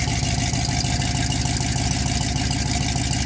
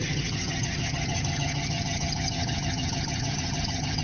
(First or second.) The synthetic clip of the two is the second